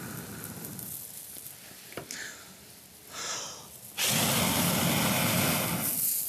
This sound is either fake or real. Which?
real